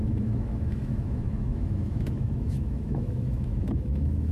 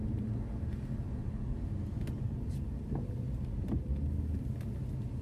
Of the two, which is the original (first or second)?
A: second